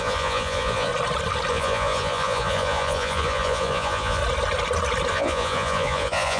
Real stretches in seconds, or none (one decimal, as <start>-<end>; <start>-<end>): 0.9-1.5; 4.2-5.1